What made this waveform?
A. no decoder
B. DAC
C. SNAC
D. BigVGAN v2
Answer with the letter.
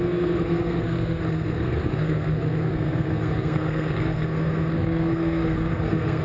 C